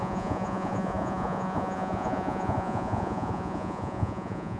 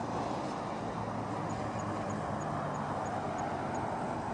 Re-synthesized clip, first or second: first